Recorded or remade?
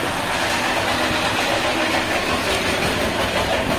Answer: recorded